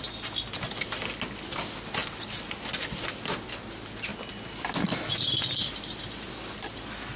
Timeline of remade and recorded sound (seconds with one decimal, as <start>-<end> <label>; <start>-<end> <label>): 0.0-7.2 recorded